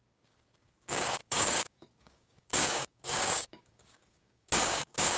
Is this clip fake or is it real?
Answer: fake